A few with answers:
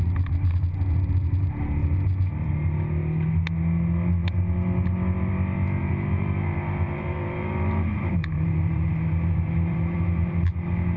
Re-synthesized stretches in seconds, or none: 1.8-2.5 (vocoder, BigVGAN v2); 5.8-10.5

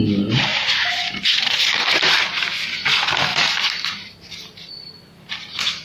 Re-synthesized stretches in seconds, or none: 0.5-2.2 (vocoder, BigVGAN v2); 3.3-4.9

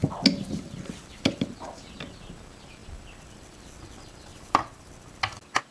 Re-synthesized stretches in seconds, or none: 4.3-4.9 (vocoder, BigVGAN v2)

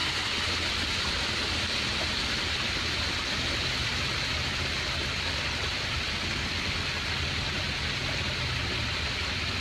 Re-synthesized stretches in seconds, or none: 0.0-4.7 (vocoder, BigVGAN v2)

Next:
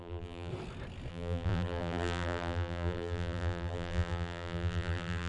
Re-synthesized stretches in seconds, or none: 0.0-0.5 (vocoder, BigVGAN v2); 1.1-5.3

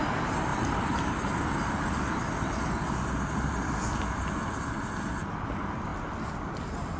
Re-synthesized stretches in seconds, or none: 0.5-4.7 (vocoder, BigVGAN v2); 5.9-6.5

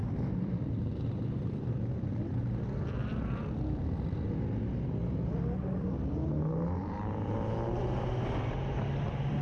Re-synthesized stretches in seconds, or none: 0.0-4.3 (vocoder, BigVGAN v2)